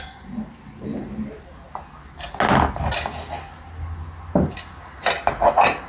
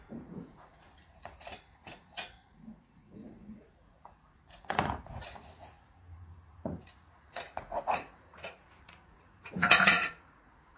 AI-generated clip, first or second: second